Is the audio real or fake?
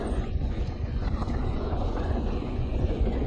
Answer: fake